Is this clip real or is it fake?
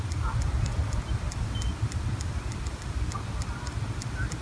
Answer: real